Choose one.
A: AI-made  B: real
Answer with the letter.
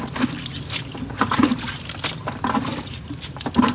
B